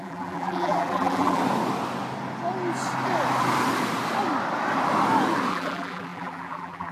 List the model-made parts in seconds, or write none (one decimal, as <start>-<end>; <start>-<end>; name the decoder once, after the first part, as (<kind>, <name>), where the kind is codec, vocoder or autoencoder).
0.0-1.4 (vocoder, BigVGAN v2); 5.5-6.9